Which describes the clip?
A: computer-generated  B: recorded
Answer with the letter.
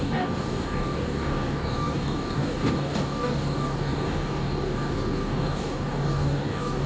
A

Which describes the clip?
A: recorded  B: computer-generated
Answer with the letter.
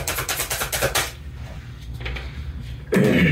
A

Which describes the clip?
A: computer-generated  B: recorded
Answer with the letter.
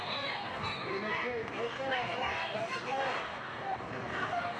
A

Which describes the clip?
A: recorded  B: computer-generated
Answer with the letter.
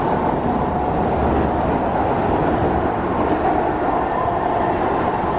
A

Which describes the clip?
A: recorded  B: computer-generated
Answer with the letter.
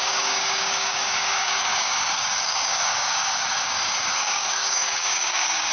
B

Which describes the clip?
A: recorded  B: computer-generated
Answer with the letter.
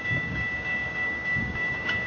B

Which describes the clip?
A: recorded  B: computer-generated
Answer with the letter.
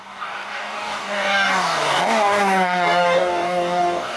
B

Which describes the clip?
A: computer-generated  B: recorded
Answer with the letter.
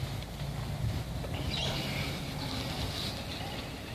B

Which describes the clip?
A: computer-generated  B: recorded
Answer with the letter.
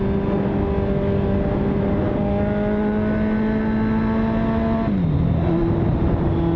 B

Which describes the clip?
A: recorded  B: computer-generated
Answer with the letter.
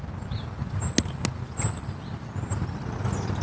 A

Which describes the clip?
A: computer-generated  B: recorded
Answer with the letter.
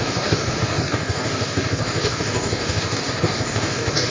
A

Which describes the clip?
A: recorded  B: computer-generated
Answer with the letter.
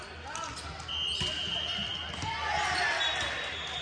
A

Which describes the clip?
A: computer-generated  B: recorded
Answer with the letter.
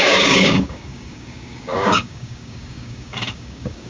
A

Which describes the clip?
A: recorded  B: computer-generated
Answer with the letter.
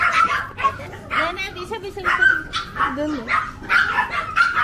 A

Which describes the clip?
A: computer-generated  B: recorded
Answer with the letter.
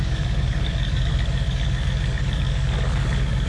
A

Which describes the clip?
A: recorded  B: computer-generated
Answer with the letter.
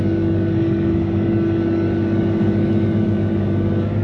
B